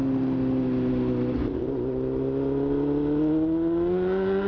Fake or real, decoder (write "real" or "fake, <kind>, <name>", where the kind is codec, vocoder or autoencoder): real